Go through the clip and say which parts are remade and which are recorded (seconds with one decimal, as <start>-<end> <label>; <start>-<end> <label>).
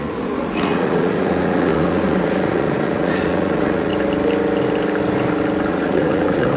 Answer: 0.0-3.9 remade; 3.9-5.7 recorded; 5.7-6.6 remade